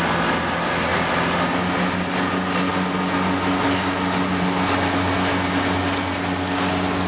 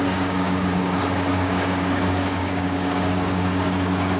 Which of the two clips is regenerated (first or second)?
second